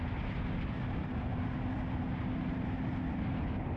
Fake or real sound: real